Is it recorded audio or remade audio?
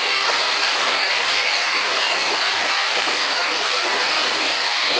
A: remade